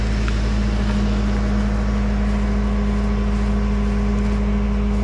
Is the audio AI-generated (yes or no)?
no